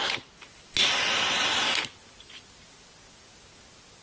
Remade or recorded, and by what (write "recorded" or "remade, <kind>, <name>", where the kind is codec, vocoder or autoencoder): recorded